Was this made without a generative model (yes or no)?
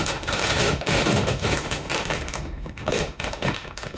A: no